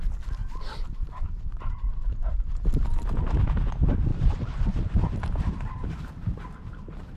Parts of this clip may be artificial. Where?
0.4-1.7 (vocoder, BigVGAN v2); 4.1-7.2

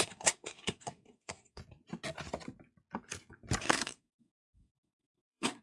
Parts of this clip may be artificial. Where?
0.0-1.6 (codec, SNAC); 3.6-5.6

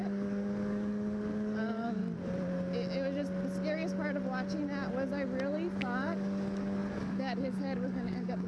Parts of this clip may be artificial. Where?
0.0-2.0 (codec, DAC); 5.8-8.5

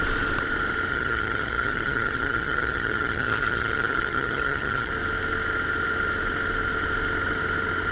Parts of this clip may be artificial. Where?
0.9-4.9 (vocoder, HiFi-GAN)

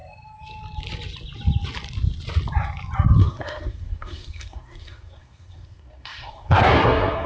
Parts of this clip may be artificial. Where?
3.2-7.3 (codec, SNAC)